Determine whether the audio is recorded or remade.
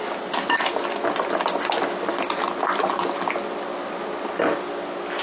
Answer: recorded